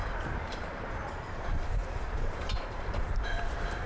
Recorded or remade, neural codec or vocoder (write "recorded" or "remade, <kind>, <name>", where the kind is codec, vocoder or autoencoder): remade, vocoder, BigVGAN v2